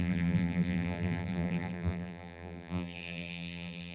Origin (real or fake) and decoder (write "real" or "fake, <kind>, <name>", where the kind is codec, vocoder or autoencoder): fake, vocoder, BigVGAN v2